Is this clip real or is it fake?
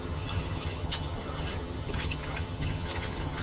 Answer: fake